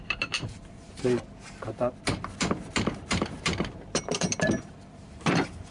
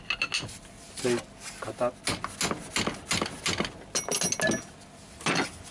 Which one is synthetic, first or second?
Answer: first